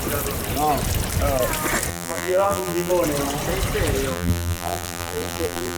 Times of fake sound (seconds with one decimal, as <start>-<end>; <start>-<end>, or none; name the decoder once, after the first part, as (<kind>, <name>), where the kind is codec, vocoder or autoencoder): 1.9-2.9 (vocoder, BigVGAN v2); 4.1-5.8